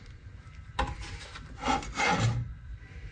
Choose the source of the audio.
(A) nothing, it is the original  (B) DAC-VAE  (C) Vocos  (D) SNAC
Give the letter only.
A